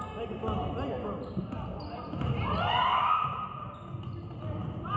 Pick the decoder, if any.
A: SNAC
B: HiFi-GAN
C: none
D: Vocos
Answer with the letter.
C